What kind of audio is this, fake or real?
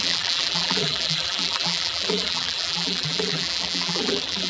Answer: fake